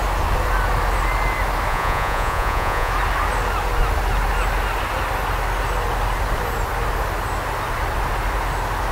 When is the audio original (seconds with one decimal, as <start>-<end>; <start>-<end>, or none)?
0.0-1.7; 2.9-8.9